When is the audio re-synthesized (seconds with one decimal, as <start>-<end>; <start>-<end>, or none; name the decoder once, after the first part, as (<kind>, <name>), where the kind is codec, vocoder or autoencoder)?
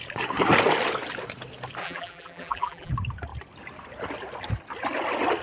1.8-2.9 (vocoder, BigVGAN v2)